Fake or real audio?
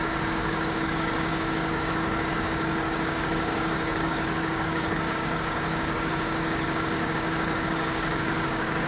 fake